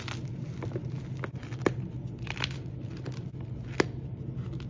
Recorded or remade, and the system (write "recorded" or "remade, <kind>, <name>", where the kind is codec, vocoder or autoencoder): recorded